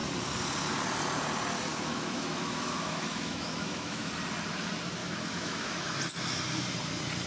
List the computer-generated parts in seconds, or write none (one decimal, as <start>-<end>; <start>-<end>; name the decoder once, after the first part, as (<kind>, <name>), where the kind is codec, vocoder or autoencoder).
1.7-4.1 (autoencoder, DAC-VAE); 5.0-6.0